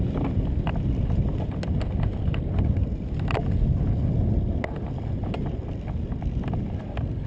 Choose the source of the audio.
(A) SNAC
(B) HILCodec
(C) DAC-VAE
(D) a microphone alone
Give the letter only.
D